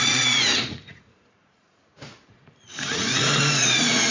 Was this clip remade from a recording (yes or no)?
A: yes